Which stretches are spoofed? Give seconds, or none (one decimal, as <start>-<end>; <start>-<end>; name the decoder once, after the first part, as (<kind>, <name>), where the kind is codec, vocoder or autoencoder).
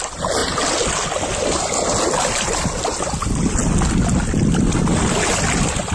none